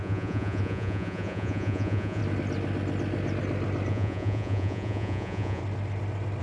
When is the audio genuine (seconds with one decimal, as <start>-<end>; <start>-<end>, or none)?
2.2-3.9; 5.6-6.4